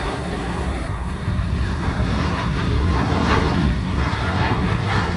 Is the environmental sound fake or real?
fake